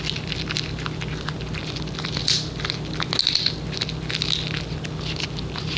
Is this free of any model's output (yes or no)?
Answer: yes